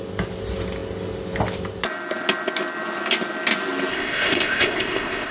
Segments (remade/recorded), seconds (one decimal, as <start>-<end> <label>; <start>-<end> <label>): 0.0-3.9 recorded; 3.9-5.3 remade